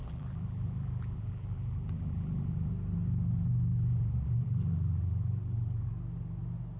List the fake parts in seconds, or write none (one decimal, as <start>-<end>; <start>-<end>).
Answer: 0.0-2.7; 3.7-5.9